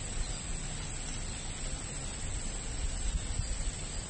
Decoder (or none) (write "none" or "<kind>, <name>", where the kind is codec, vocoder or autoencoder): none